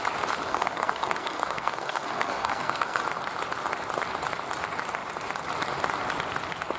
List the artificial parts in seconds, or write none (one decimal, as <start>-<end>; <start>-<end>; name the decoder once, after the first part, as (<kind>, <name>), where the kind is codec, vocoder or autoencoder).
0.5-3.0 (codec, SNAC)